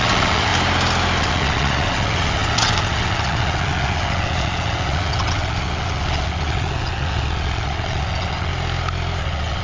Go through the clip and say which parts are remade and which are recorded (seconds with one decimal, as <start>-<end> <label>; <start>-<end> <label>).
0.0-0.5 remade; 0.5-1.2 recorded; 1.2-8.5 remade; 8.5-9.2 recorded; 9.2-9.6 remade